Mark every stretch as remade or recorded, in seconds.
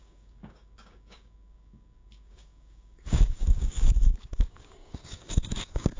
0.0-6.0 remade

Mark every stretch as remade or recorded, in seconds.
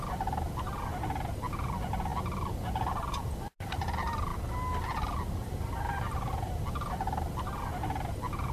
0.0-8.5 recorded